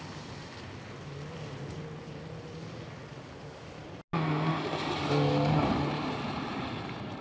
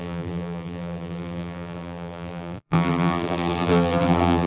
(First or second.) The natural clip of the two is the first